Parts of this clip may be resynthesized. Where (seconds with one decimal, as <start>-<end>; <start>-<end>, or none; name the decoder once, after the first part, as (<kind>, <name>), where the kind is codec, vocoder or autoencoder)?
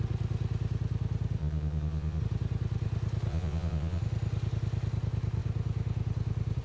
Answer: 1.4-2.2 (vocoder, Vocos); 3.3-4.0